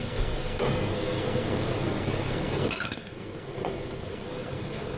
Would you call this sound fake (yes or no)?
yes